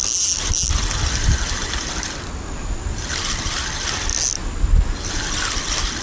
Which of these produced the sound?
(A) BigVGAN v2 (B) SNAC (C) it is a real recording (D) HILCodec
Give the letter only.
C